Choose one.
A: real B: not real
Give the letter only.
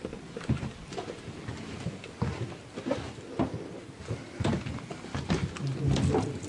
A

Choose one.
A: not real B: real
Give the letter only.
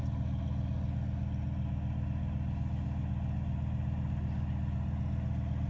B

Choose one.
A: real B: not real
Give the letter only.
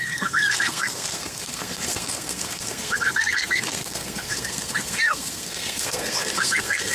B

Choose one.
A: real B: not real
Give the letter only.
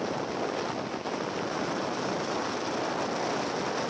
A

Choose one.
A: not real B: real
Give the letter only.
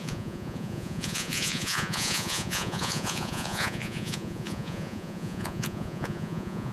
A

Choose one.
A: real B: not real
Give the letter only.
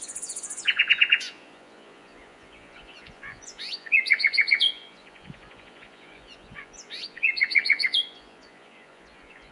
B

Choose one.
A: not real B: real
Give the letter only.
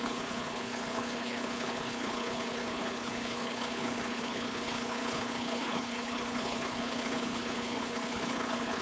A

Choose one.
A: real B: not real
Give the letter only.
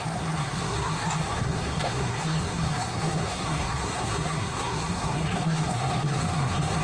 B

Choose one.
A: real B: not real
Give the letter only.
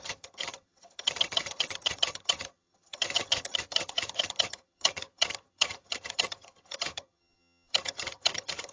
B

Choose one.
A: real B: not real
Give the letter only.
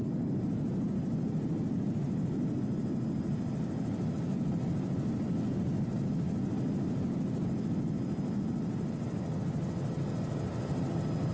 A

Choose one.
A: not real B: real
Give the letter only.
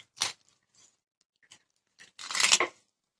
B